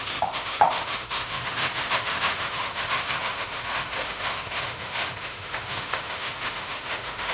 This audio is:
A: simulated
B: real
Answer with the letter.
A